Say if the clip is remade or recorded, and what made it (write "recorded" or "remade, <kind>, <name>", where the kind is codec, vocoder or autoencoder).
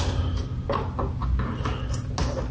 recorded